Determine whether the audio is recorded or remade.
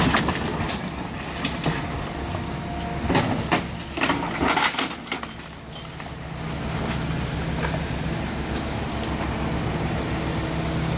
recorded